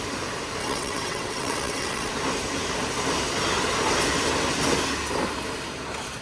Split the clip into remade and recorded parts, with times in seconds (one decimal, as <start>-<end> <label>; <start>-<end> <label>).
0.0-0.6 recorded; 0.6-2.1 remade; 2.1-6.2 recorded